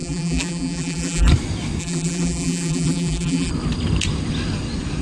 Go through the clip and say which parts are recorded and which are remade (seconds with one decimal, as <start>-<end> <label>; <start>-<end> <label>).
0.0-1.3 remade; 1.3-1.8 recorded; 1.8-3.5 remade; 3.5-5.0 recorded